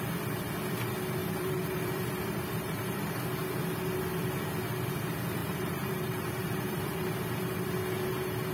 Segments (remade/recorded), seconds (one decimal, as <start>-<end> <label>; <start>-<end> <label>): 0.0-1.2 recorded; 1.2-3.2 remade; 3.2-5.4 recorded; 5.4-7.1 remade; 7.1-8.5 recorded